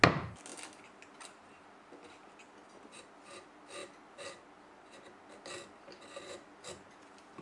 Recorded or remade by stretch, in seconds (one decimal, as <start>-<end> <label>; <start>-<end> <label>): 0.0-7.4 recorded